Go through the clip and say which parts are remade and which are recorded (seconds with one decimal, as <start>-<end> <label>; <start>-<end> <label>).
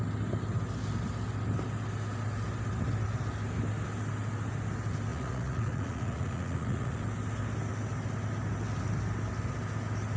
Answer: 0.0-5.1 recorded; 5.1-7.0 remade; 7.0-10.2 recorded